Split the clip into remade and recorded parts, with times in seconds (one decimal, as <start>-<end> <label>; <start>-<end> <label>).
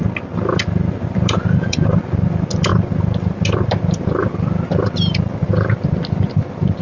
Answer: 0.0-6.8 recorded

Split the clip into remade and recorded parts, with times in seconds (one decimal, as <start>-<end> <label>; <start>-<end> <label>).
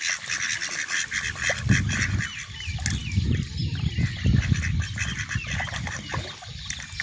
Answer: 0.0-7.0 recorded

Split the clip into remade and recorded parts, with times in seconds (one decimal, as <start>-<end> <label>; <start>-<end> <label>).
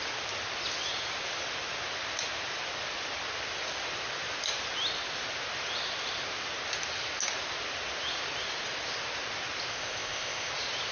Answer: 0.0-9.7 recorded; 9.7-10.5 remade; 10.5-10.9 recorded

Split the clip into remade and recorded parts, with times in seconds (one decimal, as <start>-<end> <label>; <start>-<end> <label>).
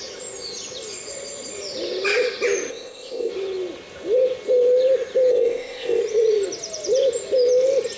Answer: 0.0-2.7 recorded; 2.7-3.3 remade; 3.3-5.3 recorded; 5.3-6.0 remade; 6.0-8.0 recorded